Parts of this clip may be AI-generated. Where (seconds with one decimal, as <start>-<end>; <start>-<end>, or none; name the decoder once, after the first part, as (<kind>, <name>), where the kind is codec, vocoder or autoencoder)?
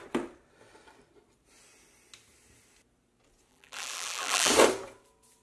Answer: 3.5-4.5 (vocoder, BigVGAN v2)